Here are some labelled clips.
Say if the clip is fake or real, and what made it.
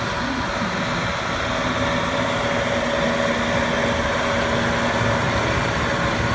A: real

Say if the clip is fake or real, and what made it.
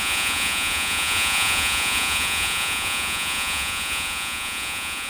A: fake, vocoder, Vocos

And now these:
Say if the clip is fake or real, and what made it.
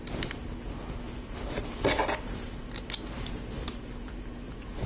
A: real